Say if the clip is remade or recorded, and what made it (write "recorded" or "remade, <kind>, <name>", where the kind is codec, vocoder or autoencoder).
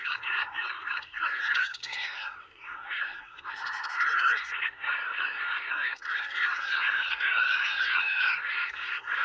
remade, codec, SNAC